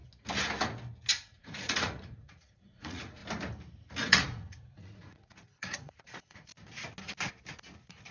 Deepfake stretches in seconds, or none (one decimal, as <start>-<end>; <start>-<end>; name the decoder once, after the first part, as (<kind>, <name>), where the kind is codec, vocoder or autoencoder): 1.1-3.2 (vocoder, Vocos); 4.0-6.5